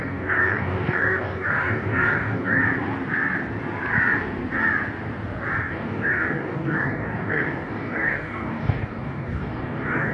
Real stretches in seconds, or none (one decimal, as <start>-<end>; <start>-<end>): 2.6-5.6